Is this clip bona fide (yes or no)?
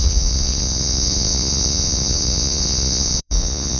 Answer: no